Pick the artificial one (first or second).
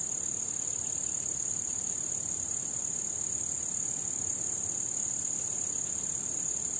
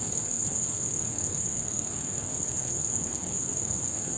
second